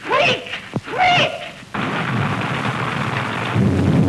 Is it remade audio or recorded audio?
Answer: recorded